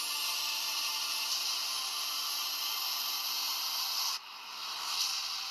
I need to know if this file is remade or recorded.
recorded